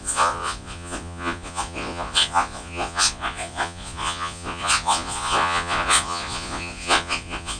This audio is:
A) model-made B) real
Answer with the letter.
A